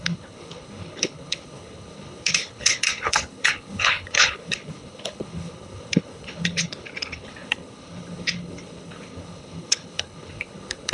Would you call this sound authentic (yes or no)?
no